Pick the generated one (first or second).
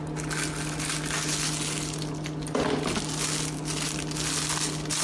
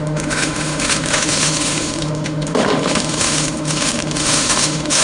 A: second